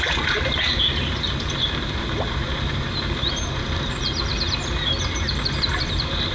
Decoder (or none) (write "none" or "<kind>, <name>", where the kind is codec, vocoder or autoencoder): vocoder, BigVGAN v2